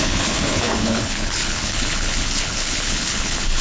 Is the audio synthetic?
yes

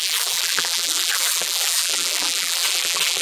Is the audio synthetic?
yes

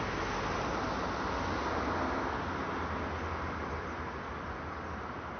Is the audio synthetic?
no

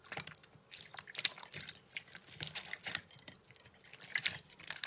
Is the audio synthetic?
no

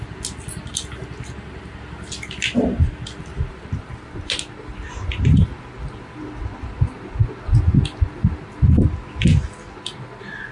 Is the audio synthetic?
no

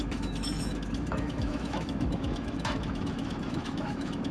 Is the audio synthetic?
yes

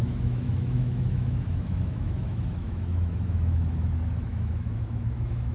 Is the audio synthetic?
yes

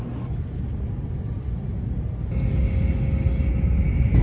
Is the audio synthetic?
no